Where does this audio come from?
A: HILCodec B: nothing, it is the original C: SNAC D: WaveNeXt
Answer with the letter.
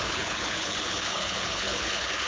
A